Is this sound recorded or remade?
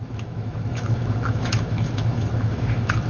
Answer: remade